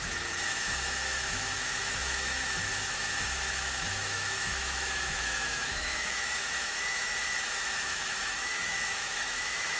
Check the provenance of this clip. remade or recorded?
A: remade